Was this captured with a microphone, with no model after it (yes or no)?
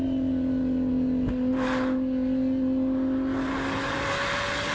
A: yes